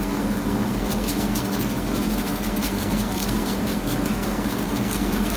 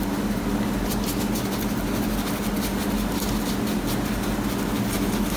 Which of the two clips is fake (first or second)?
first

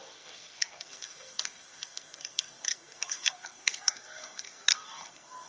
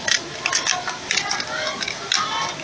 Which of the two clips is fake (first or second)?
first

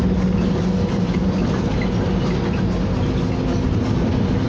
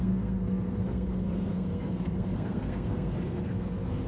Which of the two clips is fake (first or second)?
second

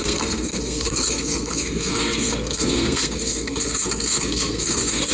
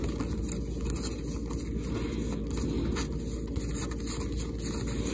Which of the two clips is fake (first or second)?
first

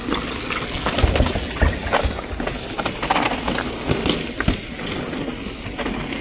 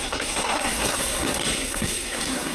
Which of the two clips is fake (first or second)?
second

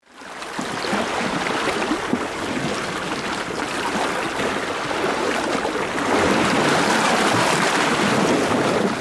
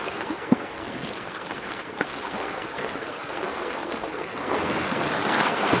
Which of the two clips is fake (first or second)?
second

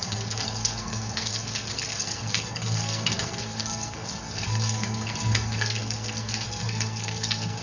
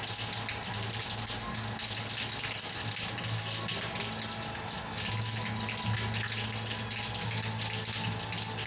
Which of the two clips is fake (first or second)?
first